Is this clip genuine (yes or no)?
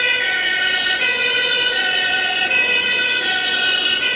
no